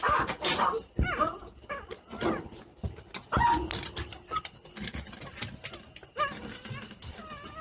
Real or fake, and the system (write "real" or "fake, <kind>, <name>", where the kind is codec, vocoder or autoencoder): real